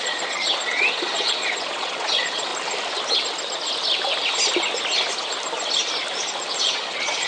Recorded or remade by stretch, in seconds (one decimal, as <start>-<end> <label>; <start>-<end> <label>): 0.0-2.5 remade; 2.5-6.6 recorded; 6.6-7.3 remade